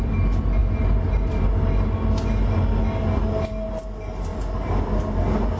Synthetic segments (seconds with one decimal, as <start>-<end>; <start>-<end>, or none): none